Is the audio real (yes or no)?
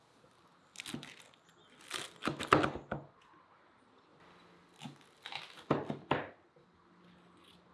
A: yes